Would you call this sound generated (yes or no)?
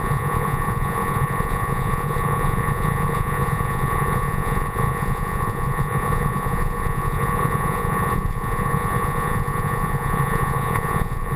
yes